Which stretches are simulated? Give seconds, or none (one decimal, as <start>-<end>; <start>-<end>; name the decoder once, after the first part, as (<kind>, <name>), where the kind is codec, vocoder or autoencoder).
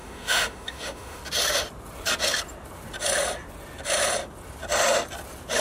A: 0.0-1.2 (autoencoder, DAC-VAE)